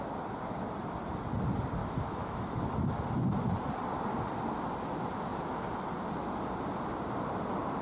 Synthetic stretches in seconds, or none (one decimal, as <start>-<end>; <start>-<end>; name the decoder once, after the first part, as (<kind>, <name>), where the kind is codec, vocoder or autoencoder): 1.8-2.4 (autoencoder, DAC-VAE)